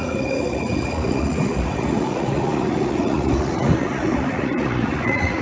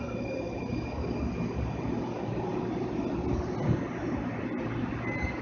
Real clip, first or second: second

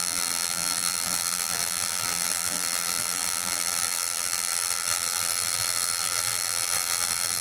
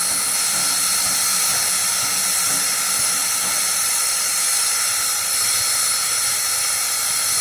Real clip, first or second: second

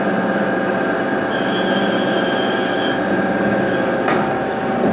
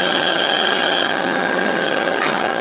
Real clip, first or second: first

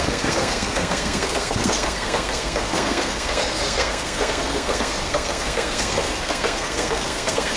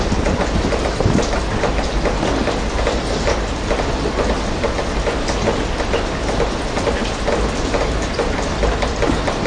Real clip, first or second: second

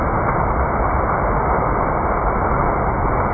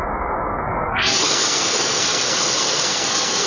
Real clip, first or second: first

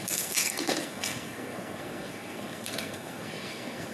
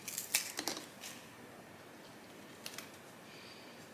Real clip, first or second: second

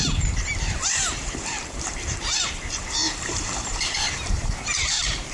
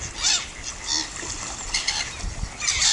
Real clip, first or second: second